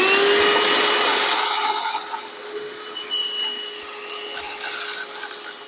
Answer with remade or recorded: recorded